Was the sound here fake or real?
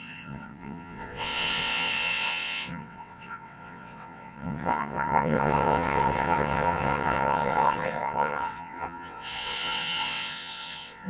fake